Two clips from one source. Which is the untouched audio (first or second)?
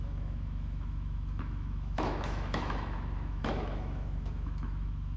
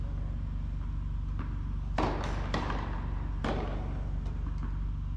second